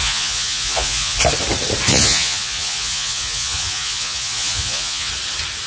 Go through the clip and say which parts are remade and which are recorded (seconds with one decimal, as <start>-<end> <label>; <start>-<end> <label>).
0.0-1.2 remade; 1.2-1.9 recorded; 1.9-5.1 remade; 5.1-5.7 recorded